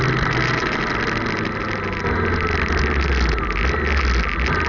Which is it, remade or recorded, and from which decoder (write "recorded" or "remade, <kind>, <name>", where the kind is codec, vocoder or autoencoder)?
recorded